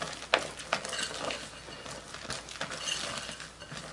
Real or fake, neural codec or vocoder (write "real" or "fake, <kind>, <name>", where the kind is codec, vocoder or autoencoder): real